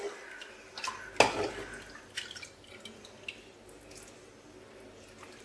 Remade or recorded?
recorded